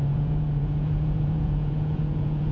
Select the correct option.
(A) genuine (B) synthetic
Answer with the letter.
B